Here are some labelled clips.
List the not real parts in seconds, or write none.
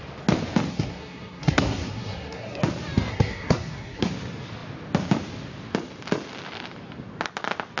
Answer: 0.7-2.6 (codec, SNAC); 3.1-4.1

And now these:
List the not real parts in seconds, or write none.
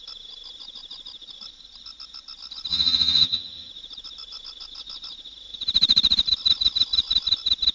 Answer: 2.7-3.7 (vocoder, HiFi-GAN)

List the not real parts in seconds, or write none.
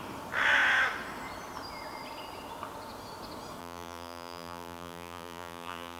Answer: 3.6-6.0 (vocoder, BigVGAN v2)